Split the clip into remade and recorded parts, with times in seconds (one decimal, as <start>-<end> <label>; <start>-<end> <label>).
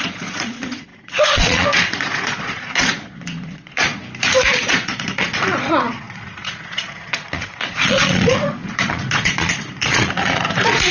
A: 0.0-4.0 remade; 4.0-4.5 recorded; 4.5-10.9 remade